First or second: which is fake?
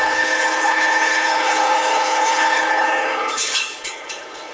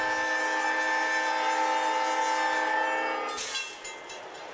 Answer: first